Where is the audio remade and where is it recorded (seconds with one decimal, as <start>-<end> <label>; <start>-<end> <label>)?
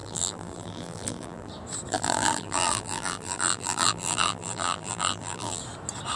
0.0-1.5 remade; 1.5-1.9 recorded; 1.9-5.6 remade; 5.6-6.2 recorded